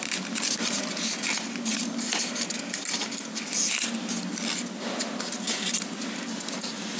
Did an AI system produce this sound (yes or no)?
no